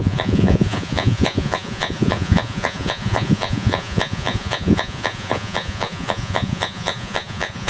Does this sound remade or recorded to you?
remade